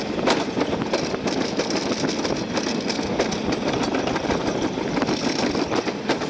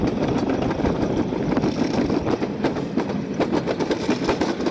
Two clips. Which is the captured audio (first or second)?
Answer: first